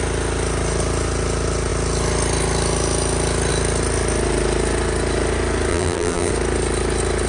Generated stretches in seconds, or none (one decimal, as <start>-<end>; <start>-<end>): 5.7-6.3